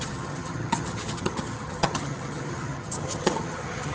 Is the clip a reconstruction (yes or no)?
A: yes